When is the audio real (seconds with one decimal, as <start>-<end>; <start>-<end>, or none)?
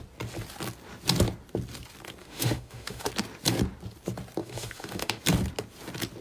0.0-2.2; 3.1-4.4; 5.2-6.2